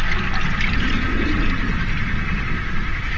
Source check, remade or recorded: recorded